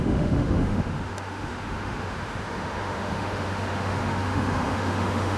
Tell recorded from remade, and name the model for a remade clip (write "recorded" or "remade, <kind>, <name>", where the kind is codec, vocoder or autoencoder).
remade, autoencoder, DAC-VAE